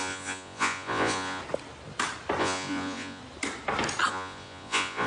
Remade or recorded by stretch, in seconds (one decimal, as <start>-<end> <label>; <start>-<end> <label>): 0.0-1.4 remade; 1.4-2.4 recorded; 2.4-3.2 remade; 3.2-4.1 recorded; 4.1-5.1 remade